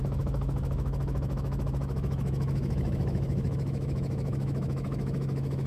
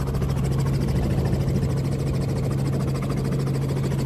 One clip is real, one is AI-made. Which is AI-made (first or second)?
first